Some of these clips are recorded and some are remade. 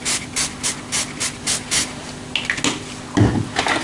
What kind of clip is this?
recorded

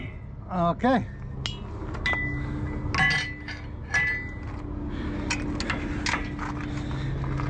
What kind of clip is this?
recorded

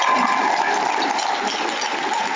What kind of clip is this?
recorded